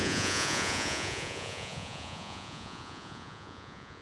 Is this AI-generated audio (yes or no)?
yes